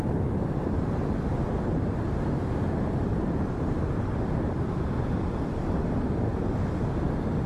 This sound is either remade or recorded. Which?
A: recorded